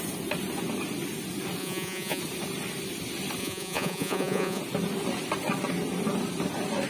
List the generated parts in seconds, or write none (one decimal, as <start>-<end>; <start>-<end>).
1.6-2.2; 3.4-4.6